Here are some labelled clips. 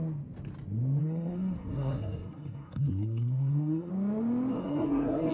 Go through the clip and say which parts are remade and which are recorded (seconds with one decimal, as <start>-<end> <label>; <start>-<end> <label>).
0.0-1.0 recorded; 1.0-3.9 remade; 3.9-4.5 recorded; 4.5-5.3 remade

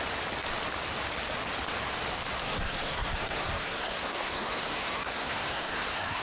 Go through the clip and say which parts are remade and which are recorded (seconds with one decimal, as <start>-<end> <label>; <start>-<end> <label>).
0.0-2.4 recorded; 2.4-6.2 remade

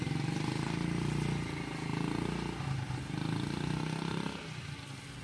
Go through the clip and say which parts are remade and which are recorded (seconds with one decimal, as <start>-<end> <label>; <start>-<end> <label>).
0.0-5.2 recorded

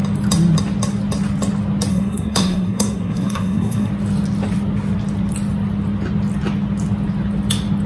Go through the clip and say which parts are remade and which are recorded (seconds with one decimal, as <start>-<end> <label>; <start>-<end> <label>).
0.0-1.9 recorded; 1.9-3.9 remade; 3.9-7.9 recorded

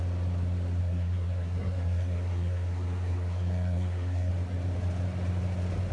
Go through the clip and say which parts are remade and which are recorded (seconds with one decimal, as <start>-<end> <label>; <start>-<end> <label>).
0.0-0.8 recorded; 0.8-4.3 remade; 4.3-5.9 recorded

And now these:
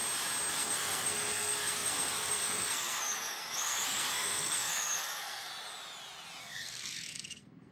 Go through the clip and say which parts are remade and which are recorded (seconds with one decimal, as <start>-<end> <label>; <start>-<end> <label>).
0.0-0.5 recorded; 0.5-5.5 remade; 5.5-6.4 recorded; 6.4-7.7 remade

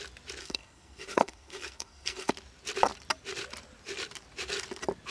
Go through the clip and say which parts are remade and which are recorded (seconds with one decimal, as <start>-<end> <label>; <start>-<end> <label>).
0.0-0.4 recorded; 0.4-2.3 remade; 2.3-5.1 recorded

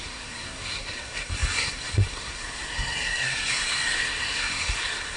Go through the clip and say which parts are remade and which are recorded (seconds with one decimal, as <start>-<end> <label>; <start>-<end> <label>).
0.0-5.2 remade